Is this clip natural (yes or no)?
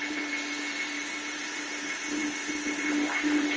no